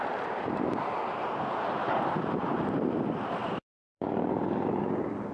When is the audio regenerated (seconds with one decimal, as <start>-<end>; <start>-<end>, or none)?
1.8-2.7; 3.4-4.8